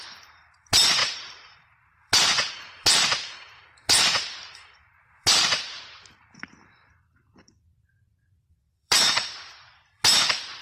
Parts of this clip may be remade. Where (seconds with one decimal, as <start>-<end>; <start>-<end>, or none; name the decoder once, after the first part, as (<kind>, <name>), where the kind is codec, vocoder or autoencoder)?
0.0-10.6 (vocoder, BigVGAN v2)